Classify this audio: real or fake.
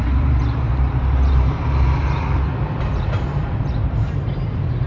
fake